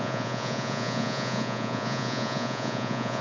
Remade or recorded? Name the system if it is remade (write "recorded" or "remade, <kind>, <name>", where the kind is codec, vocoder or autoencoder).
remade, vocoder, Vocos